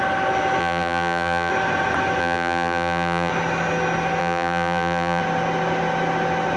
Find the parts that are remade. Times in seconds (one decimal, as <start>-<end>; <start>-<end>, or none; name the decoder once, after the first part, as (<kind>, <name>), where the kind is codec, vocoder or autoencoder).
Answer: 0.6-1.5 (vocoder, BigVGAN v2); 2.2-3.3; 4.2-5.2